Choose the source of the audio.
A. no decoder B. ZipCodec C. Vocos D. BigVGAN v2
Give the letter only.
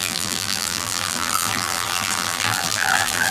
D